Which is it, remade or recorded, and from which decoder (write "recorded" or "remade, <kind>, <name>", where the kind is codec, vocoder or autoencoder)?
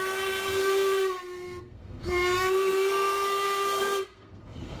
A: remade, codec, SNAC